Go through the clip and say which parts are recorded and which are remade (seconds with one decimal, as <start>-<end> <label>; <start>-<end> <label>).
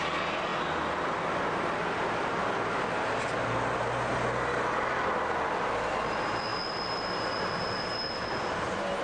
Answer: 0.0-9.0 recorded